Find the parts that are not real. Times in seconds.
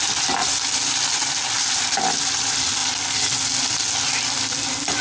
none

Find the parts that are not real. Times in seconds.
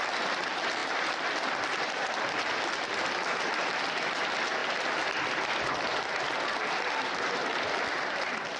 none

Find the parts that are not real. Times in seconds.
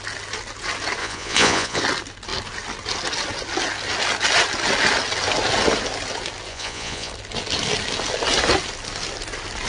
1.0-1.8 (vocoder, Vocos); 6.5-7.1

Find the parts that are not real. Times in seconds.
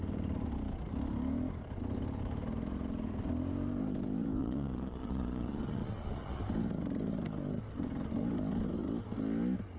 4.4-6.4 (vocoder, Vocos)